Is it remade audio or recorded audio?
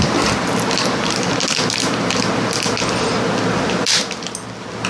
recorded